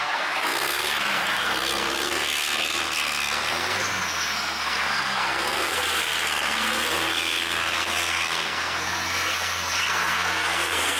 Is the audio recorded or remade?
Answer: remade